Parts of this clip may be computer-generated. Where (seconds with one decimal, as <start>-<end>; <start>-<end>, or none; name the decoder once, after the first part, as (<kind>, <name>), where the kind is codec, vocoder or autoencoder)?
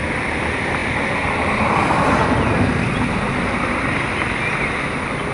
none